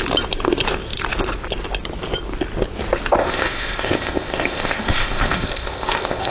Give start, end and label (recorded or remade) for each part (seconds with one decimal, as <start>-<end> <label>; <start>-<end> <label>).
0.0-3.2 recorded; 3.2-6.3 remade